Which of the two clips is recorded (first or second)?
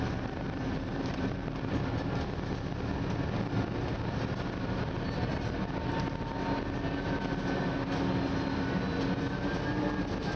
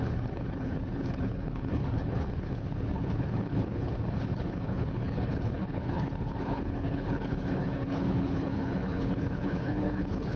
first